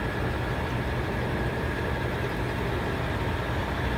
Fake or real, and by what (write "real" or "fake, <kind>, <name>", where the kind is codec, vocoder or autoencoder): real